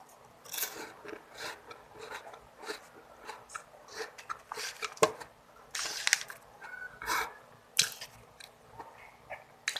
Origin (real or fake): real